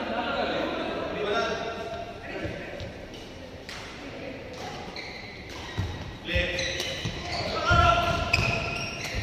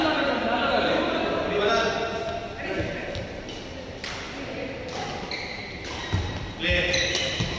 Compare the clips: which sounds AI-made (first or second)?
first